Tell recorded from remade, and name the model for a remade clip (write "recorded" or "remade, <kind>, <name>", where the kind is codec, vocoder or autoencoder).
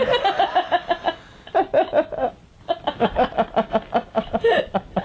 recorded